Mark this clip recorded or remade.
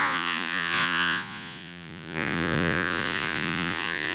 remade